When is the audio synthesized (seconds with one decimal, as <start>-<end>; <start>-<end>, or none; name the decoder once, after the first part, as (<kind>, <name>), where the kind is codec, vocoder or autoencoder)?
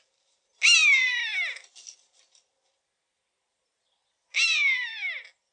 none